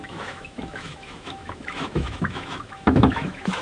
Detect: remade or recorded remade